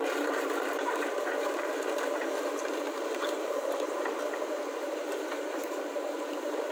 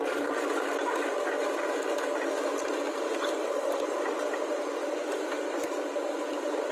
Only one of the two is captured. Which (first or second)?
second